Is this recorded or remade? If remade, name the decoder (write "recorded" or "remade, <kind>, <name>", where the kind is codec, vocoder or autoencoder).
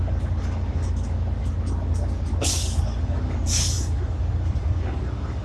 remade, codec, DAC